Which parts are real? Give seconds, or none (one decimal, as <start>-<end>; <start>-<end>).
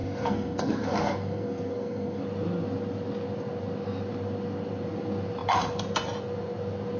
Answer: 2.2-7.0